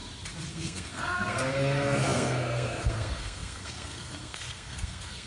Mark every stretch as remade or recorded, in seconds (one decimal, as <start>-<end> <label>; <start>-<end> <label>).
0.0-0.5 recorded; 0.5-5.3 remade